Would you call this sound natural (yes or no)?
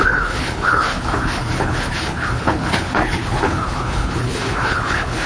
no